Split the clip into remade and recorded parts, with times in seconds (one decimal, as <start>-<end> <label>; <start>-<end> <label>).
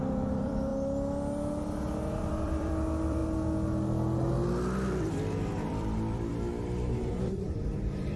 0.0-0.7 remade; 0.7-2.1 recorded; 2.1-3.2 remade; 3.2-5.1 recorded; 5.1-6.3 remade; 6.3-7.1 recorded; 7.1-8.2 remade